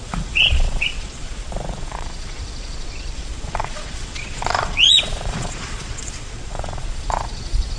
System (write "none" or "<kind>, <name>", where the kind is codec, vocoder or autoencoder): vocoder, Vocos